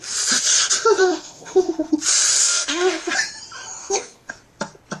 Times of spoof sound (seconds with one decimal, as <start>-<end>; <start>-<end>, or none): 1.0-1.9; 2.4-3.1; 3.8-4.3